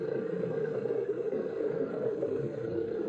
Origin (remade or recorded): remade